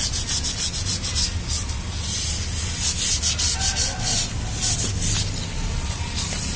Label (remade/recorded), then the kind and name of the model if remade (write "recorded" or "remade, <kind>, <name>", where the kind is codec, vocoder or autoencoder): recorded